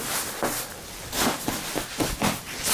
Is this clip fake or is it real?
real